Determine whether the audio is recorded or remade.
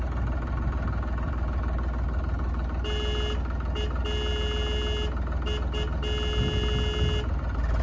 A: recorded